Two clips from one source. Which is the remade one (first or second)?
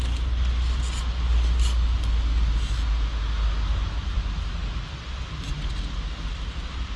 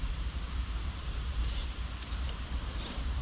second